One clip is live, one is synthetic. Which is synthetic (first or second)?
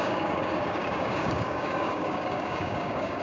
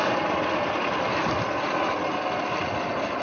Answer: first